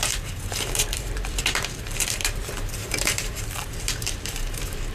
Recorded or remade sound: remade